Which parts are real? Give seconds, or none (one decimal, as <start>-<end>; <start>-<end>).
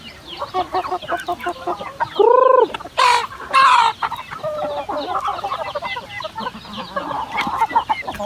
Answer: 0.0-8.2